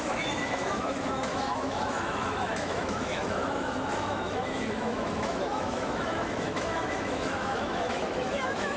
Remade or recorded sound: remade